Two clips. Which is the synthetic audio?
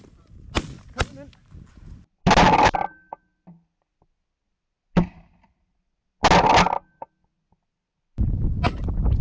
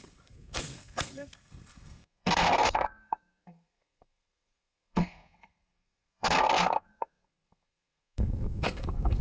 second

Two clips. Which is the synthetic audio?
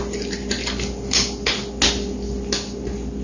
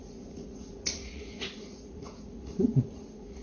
second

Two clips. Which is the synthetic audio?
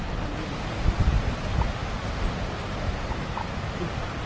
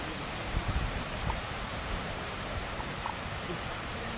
second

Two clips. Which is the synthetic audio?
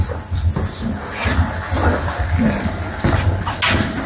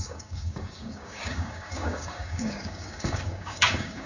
second